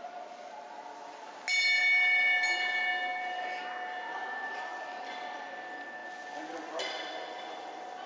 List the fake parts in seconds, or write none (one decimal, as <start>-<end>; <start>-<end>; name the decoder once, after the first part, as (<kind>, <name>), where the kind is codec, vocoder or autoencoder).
none